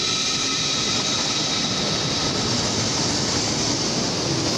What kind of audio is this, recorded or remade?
recorded